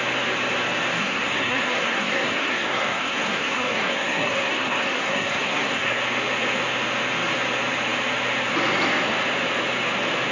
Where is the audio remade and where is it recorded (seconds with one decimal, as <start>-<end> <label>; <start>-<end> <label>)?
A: 0.0-1.0 recorded; 1.0-6.0 remade; 6.0-10.3 recorded